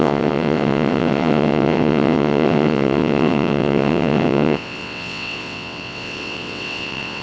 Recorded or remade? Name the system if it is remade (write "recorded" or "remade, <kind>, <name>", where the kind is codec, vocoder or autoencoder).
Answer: remade, vocoder, WaveNeXt